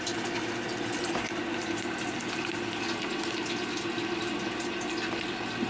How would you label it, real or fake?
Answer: real